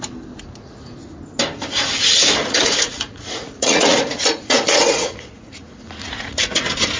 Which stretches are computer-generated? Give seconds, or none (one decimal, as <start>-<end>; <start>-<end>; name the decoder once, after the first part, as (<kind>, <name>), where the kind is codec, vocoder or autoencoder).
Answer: 2.4-6.6 (vocoder, Vocos)